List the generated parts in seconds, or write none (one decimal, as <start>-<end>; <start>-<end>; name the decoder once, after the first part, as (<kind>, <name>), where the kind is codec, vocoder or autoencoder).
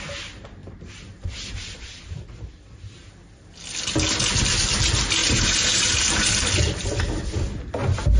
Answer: 0.6-2.2 (vocoder, BigVGAN v2); 5.2-6.3